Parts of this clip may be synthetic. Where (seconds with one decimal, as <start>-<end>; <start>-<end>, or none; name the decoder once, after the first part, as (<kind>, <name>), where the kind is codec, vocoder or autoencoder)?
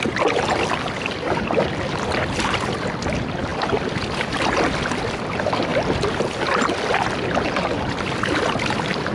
none